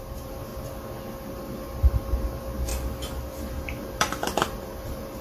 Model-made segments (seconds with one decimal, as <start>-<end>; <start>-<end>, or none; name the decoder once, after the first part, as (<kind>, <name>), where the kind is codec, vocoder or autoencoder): 0.0-0.5 (vocoder, BigVGAN v2); 1.3-2.7; 3.5-5.2